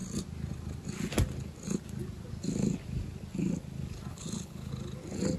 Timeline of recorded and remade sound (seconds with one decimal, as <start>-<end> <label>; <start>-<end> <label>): 0.0-4.1 recorded; 4.1-4.7 remade; 4.7-5.4 recorded